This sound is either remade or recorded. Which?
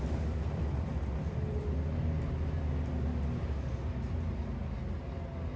recorded